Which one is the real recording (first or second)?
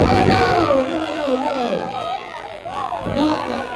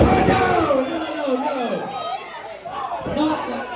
second